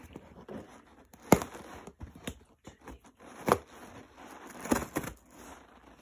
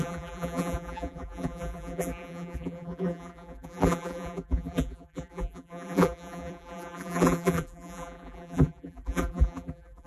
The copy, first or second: second